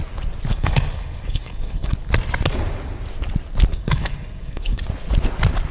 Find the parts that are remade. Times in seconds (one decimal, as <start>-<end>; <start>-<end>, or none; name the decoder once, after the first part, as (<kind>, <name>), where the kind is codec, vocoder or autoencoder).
0.5-1.9 (codec, DAC); 3.7-4.8